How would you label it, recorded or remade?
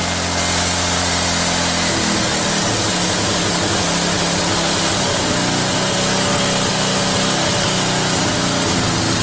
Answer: recorded